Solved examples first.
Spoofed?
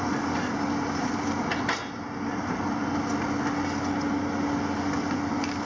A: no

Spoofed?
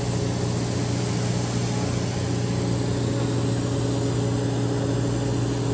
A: no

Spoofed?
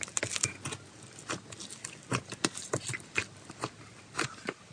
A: no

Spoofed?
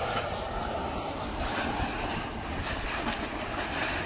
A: no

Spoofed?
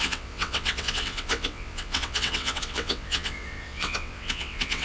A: yes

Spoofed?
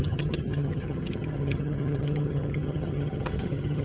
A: yes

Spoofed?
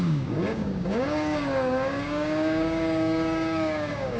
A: yes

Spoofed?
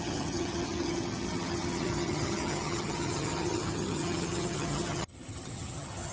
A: yes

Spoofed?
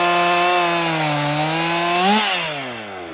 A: no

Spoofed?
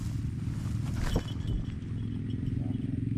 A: no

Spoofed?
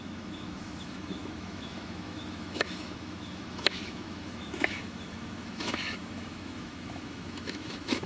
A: yes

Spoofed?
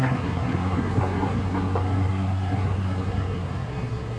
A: yes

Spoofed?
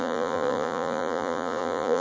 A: yes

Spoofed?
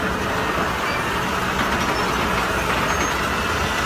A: no